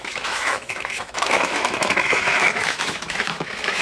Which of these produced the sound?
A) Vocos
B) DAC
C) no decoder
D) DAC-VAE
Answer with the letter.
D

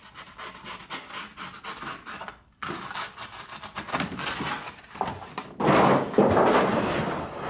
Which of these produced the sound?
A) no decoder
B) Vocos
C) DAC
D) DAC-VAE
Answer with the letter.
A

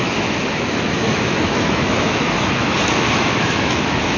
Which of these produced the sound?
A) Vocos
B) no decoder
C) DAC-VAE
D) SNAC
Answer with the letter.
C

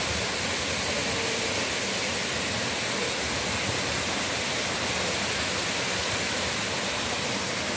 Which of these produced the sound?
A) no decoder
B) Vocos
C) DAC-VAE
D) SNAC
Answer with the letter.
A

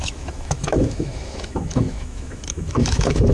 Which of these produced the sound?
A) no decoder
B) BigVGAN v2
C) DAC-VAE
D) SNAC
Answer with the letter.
C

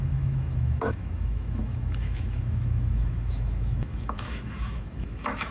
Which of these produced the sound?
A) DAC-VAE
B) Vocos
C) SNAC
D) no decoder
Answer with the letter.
A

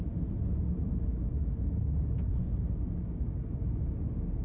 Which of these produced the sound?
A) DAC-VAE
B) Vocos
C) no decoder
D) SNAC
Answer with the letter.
C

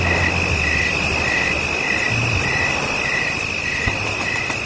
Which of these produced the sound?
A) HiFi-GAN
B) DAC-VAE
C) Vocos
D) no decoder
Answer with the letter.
D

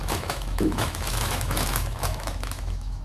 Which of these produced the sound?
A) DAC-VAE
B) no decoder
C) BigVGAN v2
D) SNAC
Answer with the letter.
A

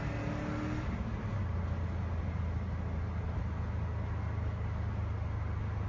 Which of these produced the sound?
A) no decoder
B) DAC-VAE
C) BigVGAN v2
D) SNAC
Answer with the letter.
A